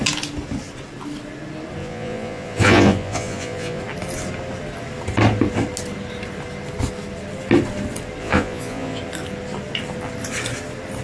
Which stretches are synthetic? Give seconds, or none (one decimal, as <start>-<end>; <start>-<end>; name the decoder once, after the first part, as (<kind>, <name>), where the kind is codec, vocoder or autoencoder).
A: 1.8-3.8 (vocoder, Vocos); 8.2-9.0